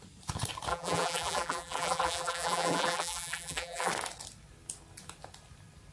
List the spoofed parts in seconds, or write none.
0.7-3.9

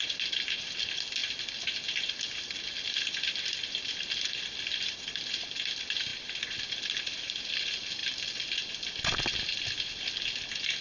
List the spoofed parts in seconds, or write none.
none

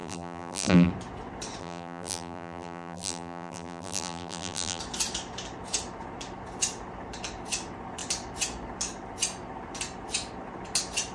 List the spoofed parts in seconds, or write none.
0.0-0.9; 1.6-4.8

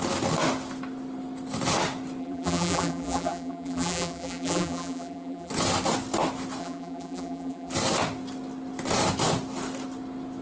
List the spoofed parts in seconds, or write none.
2.2-5.5; 6.6-7.7

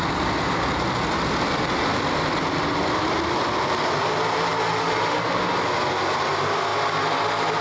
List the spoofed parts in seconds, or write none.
4.5-5.4

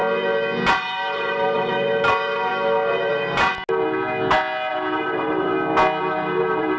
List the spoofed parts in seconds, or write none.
0.7-2.5; 3.1-3.5; 4.7-5.5; 6.0-6.8

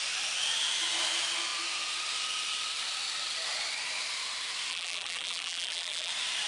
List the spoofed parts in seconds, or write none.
4.7-6.1